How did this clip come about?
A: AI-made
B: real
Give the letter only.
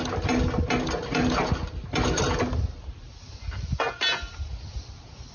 B